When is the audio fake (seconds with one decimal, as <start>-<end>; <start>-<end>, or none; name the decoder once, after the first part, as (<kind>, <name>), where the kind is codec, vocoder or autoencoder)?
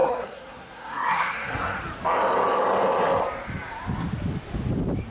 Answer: 0.0-1.8 (codec, SNAC)